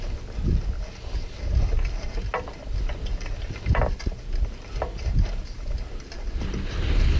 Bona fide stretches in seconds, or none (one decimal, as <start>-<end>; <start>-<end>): 0.0-7.2